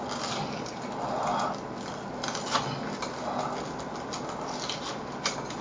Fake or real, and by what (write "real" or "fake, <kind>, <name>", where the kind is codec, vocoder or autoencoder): real